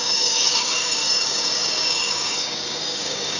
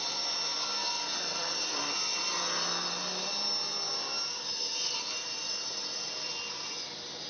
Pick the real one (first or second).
second